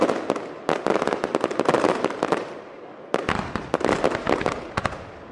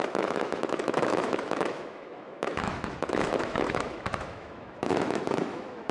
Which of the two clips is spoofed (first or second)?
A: second